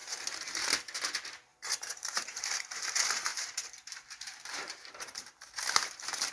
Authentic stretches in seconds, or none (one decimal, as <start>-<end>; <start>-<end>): 0.6-1.5; 2.4-3.3